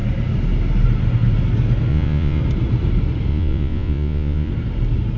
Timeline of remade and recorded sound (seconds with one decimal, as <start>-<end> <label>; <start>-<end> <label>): 0.0-1.9 recorded; 1.9-2.4 remade; 2.4-3.3 recorded; 3.3-4.5 remade; 4.5-5.2 recorded